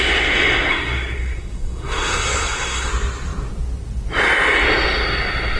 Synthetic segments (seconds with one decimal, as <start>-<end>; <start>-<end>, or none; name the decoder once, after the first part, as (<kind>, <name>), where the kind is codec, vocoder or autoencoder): 0.7-2.9 (codec, SNAC)